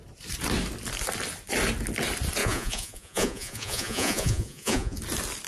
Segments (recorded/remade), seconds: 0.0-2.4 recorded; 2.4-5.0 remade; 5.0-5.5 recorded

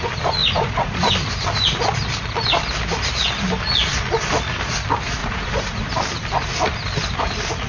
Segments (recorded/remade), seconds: 0.0-0.4 recorded; 0.4-1.1 remade; 1.1-5.2 recorded; 5.2-5.9 remade; 5.9-7.7 recorded

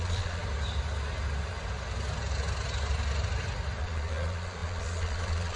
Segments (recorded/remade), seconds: 0.0-0.4 remade; 0.4-3.8 recorded; 3.8-5.6 remade

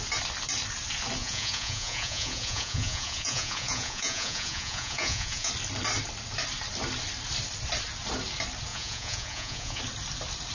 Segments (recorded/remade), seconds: 0.0-1.2 recorded; 1.2-5.5 remade; 5.5-8.7 recorded; 8.7-9.8 remade; 9.8-10.5 recorded

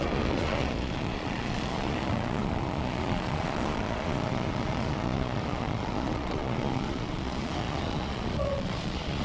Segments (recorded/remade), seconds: 0.0-9.2 remade

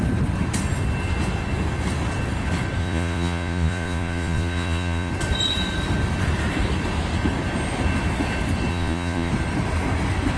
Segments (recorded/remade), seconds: 0.0-2.8 recorded; 2.8-5.1 remade; 5.1-8.7 recorded; 8.7-9.3 remade; 9.3-10.4 recorded

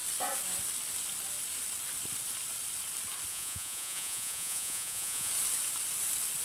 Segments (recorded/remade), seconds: 0.0-3.3 recorded; 3.3-5.3 remade; 5.3-6.4 recorded

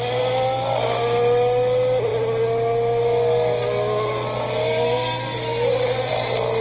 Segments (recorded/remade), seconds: 0.0-6.6 recorded